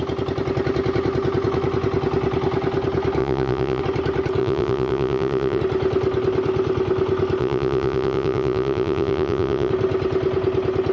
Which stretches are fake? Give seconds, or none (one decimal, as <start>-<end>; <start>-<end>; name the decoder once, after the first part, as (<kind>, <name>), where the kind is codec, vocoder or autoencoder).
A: 3.2-3.8 (vocoder, Vocos); 4.4-5.6; 7.4-9.7